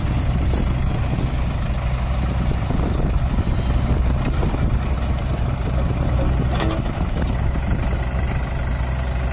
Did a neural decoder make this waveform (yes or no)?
no